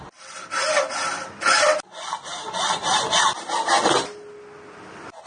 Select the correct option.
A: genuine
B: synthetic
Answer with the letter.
A